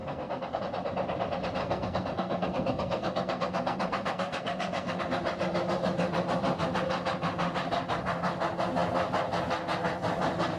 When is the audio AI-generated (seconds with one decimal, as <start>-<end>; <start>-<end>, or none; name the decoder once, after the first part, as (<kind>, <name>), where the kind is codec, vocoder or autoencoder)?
0.0-0.6 (codec, SNAC); 1.6-5.0